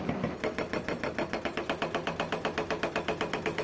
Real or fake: real